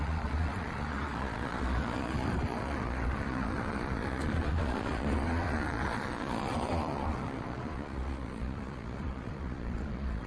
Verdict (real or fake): fake